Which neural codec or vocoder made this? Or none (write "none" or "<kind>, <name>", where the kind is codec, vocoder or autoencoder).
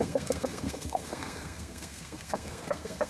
codec, SNAC